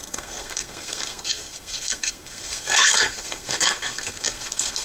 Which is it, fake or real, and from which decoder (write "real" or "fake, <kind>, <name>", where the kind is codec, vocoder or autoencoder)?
fake, codec, SNAC